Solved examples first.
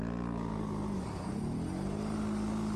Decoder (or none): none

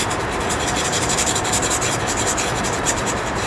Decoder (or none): vocoder, BigVGAN v2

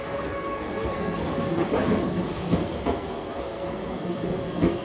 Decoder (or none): codec, SNAC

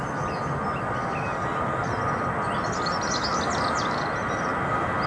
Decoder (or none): none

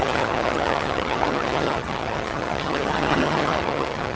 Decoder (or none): vocoder, HiFi-GAN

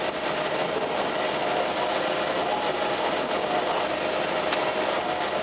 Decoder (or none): none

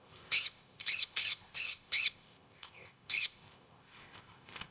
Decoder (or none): codec, ZipCodec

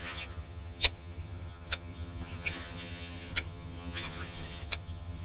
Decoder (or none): vocoder, HiFi-GAN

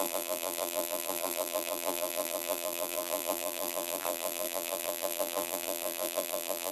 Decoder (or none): vocoder, BigVGAN v2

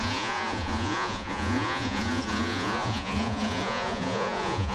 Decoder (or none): vocoder, Vocos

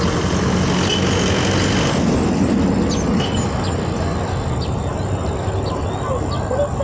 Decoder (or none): none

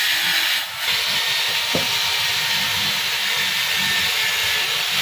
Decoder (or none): none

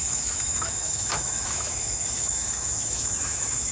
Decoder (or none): autoencoder, DAC-VAE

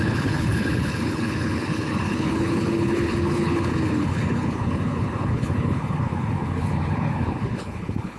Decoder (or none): codec, HILCodec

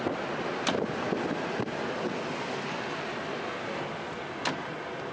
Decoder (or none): none